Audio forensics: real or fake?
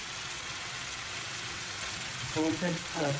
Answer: fake